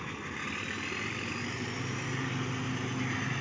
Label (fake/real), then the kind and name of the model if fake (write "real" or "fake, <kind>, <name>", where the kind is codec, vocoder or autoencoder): real